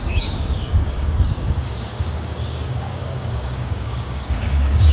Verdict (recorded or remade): remade